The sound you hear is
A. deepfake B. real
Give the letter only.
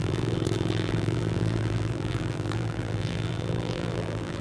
A